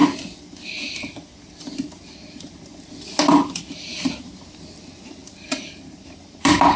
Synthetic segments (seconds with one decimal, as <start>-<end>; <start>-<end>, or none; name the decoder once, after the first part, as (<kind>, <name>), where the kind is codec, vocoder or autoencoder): 0.0-4.0 (vocoder, BigVGAN v2); 5.2-6.8